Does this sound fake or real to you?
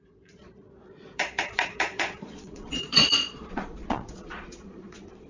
fake